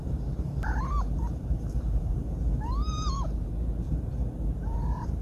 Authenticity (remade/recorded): remade